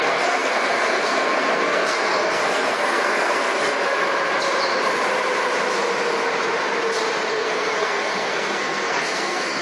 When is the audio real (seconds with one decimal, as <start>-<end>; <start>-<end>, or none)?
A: 4.0-7.3

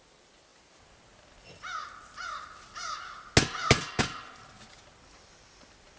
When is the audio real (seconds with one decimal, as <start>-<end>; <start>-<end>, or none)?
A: 0.0-6.0

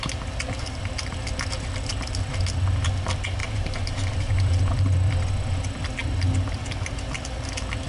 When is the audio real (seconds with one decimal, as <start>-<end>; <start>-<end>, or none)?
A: 0.0-3.4; 4.7-7.9

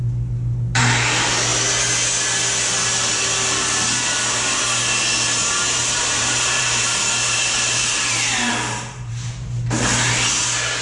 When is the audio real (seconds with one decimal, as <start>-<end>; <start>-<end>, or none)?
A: 0.0-5.4; 9.6-10.8

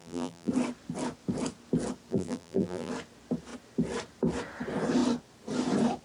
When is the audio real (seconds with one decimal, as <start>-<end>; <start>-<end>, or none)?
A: 0.5-2.1; 2.9-6.0